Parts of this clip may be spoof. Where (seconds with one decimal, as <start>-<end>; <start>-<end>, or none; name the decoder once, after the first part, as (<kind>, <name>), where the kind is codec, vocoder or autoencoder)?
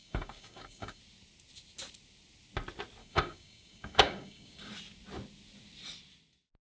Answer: 0.0-1.0 (codec, DAC); 3.0-4.7